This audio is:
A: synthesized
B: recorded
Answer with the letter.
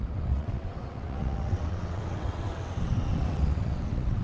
A